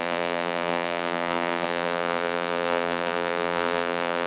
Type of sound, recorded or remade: remade